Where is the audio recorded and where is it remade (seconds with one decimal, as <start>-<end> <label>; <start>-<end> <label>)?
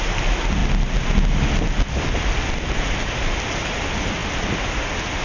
0.0-5.2 recorded